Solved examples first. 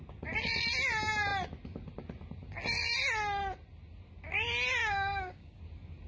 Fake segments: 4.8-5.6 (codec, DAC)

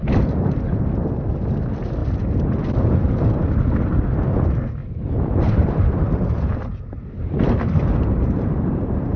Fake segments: 4.8-9.2 (vocoder, BigVGAN v2)

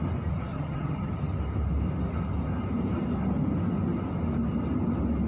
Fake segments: 0.5-1.1 (vocoder, HiFi-GAN)

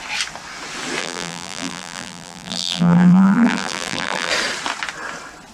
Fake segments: 1.0-4.3 (vocoder, BigVGAN v2)

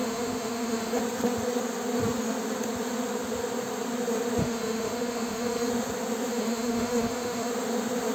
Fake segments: 0.0-1.0 (autoencoder, DAC-VAE); 4.4-5.7; 6.3-7.5

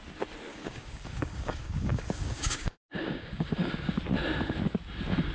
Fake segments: 0.5-3.7 (codec, DAC)

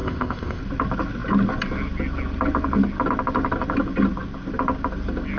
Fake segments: 0.0-0.6 (codec, ZipCodec)